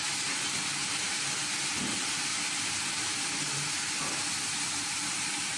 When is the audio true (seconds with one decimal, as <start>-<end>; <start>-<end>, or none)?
0.0-0.8; 1.4-2.3; 4.2-5.6

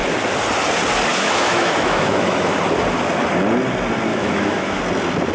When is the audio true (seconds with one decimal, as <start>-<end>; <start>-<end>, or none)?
0.0-1.1; 2.6-4.1; 4.8-5.3

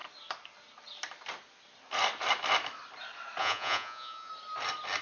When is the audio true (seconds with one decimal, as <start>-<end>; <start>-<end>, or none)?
0.0-3.4; 4.3-5.0

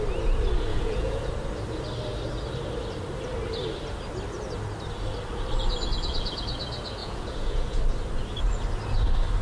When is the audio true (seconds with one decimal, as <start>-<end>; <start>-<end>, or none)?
0.0-0.7; 1.3-7.0; 7.8-9.4

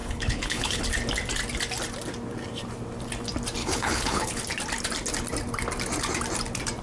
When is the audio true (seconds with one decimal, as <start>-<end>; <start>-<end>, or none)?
0.8-3.6; 4.4-6.8

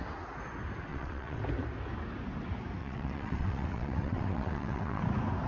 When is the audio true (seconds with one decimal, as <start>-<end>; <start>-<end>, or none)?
0.0-0.9; 1.4-2.8; 5.0-5.5

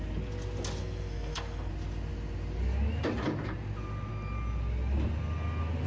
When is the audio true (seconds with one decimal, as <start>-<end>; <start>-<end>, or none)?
0.0-0.8; 1.7-5.9

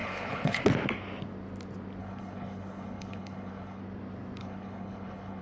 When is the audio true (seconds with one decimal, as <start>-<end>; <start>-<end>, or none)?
0.6-2.0; 3.8-4.4